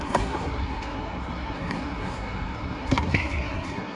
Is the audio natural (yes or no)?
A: no